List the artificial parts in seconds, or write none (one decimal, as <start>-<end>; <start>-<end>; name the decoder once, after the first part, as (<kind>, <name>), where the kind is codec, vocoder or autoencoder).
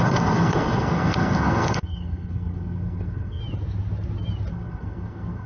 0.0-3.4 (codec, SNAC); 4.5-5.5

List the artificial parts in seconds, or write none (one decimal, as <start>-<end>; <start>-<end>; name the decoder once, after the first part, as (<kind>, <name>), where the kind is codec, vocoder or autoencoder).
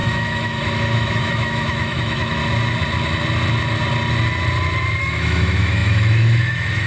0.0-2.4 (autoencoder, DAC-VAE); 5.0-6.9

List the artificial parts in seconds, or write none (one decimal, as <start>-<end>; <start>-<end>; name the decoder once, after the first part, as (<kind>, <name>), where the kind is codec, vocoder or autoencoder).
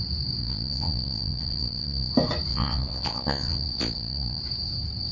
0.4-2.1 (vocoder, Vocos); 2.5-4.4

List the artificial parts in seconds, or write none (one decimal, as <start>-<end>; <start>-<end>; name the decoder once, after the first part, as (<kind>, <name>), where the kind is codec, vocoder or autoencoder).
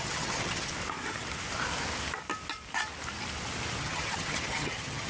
0.0-0.7 (vocoder, HiFi-GAN); 3.8-5.1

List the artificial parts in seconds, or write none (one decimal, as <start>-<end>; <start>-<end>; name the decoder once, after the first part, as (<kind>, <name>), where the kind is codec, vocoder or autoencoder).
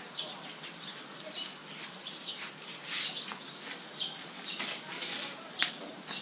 0.0-2.8 (vocoder, BigVGAN v2); 4.6-6.2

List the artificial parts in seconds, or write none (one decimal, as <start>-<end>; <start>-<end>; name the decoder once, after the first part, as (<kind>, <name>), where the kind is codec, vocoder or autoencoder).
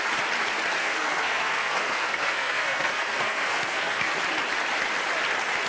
0.8-4.1 (codec, SNAC)